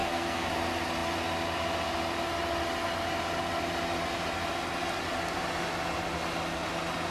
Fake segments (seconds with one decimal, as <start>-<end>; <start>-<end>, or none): 0.0-0.5

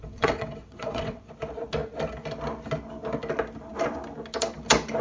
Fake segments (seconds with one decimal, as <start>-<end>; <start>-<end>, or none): 0.0-1.3

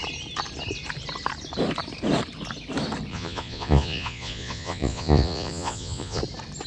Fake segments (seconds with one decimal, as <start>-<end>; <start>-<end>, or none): 3.1-6.2

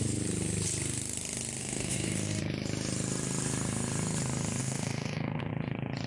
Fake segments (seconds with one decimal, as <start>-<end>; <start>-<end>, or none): 1.6-2.4; 4.6-5.5

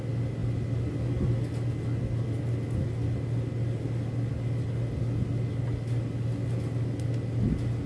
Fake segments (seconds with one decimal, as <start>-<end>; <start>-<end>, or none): none

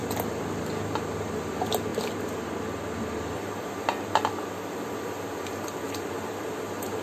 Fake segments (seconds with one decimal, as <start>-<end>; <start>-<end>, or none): none